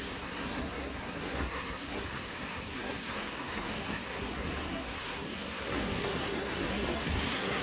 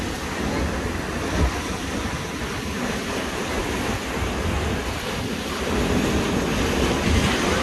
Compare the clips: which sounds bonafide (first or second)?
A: second